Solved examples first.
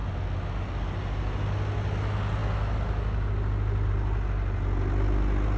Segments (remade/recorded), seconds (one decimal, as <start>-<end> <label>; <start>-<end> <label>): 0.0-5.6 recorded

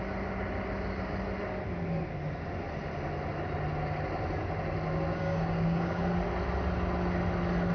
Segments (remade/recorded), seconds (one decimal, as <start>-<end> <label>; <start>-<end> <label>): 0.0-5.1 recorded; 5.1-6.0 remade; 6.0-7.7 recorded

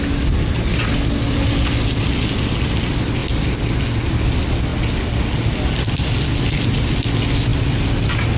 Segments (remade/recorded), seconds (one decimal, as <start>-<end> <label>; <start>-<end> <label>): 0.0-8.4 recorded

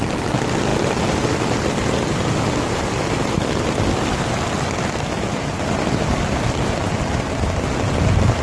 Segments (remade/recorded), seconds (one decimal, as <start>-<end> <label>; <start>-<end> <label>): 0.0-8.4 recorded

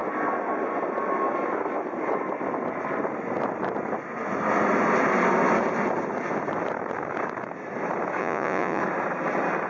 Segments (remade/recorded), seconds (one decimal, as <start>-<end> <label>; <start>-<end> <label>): 0.0-8.2 recorded; 8.2-8.8 remade; 8.8-9.7 recorded

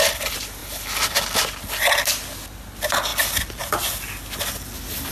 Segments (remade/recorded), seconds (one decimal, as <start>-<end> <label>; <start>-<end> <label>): 0.0-3.1 recorded; 3.1-3.6 remade; 3.6-5.1 recorded